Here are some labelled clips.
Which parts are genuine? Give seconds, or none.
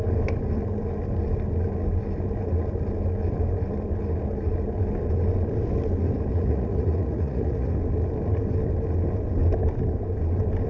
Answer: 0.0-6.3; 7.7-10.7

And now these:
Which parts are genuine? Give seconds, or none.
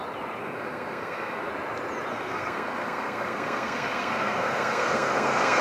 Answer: 0.0-0.4; 1.5-2.1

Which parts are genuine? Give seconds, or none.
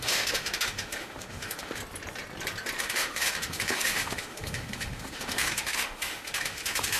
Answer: 1.8-2.8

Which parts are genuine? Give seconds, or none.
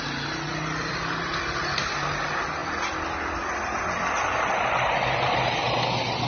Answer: 0.0-6.3